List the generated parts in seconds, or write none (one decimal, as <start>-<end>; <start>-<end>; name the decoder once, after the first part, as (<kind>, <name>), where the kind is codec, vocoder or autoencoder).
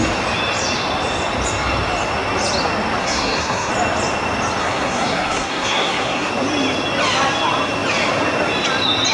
3.0-3.7 (codec, SNAC); 4.6-6.3